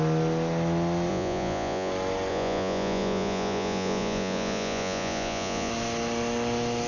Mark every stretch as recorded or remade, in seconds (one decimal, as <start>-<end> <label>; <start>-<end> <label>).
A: 0.0-1.1 recorded; 1.1-1.9 remade; 1.9-2.3 recorded; 2.3-5.7 remade; 5.7-6.9 recorded